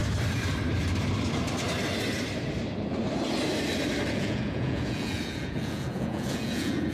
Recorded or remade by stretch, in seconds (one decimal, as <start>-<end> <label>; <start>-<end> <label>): 0.0-4.1 recorded; 4.1-6.9 remade